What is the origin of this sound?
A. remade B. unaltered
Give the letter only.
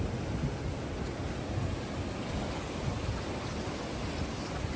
B